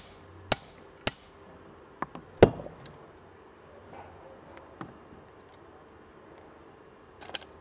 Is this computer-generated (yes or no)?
no